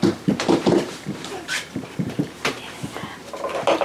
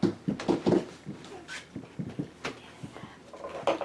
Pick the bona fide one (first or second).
second